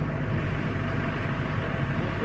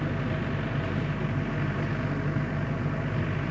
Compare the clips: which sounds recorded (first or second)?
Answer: second